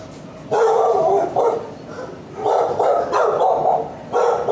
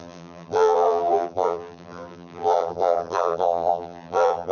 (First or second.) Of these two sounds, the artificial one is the second